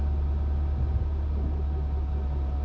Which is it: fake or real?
real